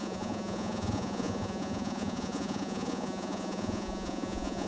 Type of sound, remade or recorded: remade